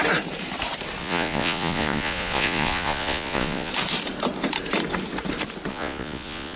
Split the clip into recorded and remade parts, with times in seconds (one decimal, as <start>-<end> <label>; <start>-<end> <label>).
0.0-1.0 recorded; 1.0-3.7 remade; 3.7-5.7 recorded; 5.7-6.6 remade

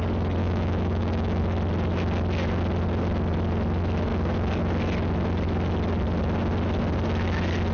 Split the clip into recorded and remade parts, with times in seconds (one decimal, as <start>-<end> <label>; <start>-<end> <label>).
0.0-0.4 recorded; 0.4-1.4 remade; 1.4-7.7 recorded

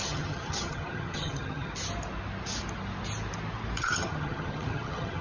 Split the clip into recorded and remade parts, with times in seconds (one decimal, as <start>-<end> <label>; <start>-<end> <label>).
0.0-1.7 remade; 1.7-3.8 recorded; 3.8-5.2 remade